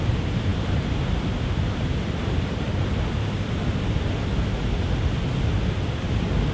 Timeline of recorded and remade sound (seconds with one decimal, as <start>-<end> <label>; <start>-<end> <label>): 0.0-6.5 recorded